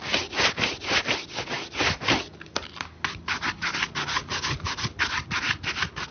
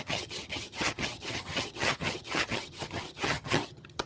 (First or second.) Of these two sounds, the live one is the first